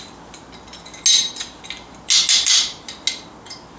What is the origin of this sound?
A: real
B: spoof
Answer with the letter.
A